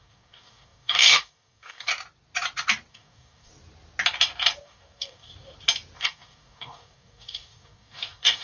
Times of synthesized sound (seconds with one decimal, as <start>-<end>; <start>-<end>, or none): 0.0-1.9; 2.9-3.5; 4.6-5.3; 6.0-8.4